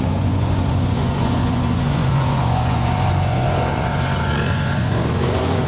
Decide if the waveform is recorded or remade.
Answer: remade